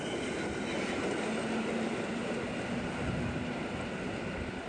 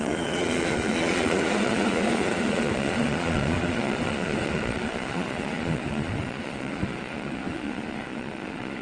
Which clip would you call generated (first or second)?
second